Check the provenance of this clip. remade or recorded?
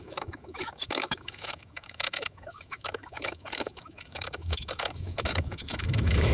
remade